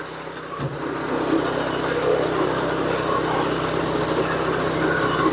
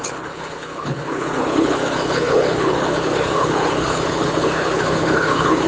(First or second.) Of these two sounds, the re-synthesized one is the second